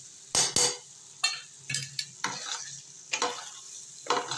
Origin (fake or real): real